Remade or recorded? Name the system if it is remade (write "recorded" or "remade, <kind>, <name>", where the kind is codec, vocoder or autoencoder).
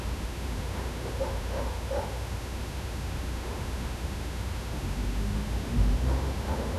remade, autoencoder, DAC-VAE